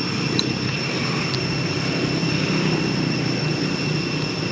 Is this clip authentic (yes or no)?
yes